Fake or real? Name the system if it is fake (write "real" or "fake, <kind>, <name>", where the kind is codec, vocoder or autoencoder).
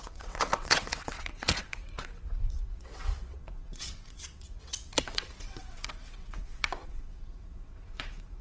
fake, vocoder, WaveNeXt